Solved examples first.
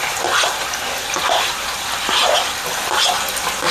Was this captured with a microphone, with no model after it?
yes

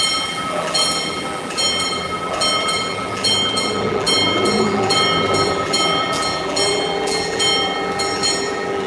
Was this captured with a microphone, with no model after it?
no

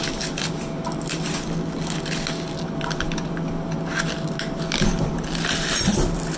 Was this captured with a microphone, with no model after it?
yes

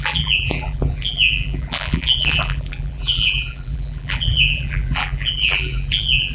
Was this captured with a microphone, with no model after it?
no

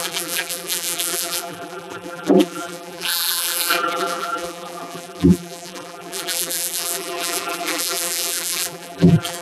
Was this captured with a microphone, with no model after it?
no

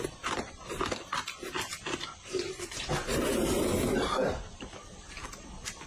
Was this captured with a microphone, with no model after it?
no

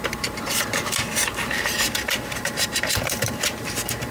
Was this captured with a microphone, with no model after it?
no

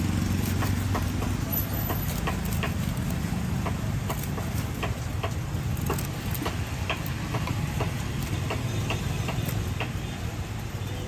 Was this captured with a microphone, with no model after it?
yes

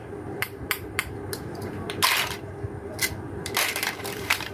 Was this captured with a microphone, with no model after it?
no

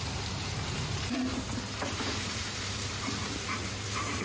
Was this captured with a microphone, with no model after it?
no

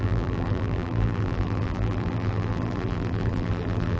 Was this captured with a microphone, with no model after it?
no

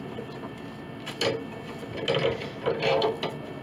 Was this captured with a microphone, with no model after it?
yes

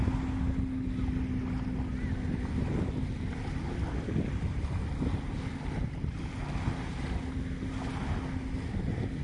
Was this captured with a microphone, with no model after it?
yes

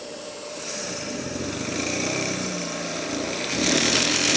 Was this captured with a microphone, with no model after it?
no